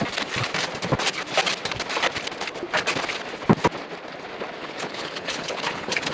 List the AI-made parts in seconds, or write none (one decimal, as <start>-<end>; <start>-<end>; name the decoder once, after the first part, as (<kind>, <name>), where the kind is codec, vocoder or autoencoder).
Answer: 4.6-6.1 (codec, HILCodec)